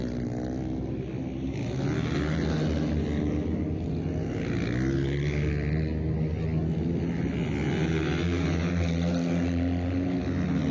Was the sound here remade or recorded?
recorded